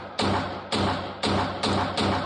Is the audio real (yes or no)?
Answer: yes